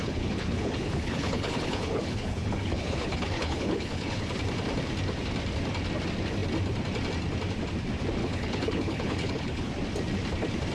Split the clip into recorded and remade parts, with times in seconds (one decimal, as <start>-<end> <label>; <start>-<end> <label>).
0.0-4.3 remade; 4.3-8.2 recorded; 8.2-9.7 remade; 9.7-10.7 recorded